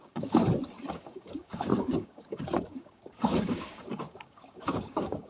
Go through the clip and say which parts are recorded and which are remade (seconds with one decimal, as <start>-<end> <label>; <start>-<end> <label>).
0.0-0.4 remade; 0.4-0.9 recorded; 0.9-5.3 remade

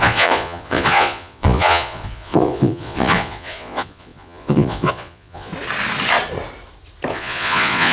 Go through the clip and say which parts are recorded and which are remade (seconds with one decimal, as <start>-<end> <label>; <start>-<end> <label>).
0.0-5.5 remade; 5.5-7.1 recorded; 7.1-7.9 remade

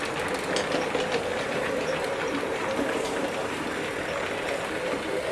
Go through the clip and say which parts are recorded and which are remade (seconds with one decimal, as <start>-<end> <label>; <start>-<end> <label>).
0.0-1.3 recorded; 1.3-3.7 remade; 3.7-5.3 recorded

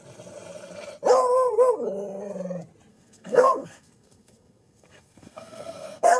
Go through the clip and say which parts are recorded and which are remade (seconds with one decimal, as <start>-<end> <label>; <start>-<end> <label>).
0.0-2.9 recorded; 2.9-6.2 remade

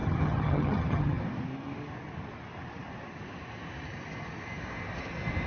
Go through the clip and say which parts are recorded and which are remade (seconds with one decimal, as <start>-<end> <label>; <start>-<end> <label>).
0.0-1.2 remade; 1.2-5.5 recorded